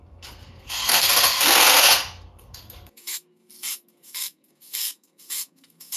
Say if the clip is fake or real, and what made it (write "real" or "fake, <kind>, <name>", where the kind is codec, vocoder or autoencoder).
fake, codec, SNAC